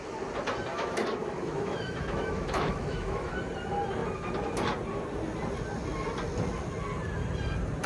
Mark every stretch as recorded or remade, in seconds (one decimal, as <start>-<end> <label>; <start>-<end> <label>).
0.0-0.7 recorded; 0.7-3.3 remade; 3.3-7.9 recorded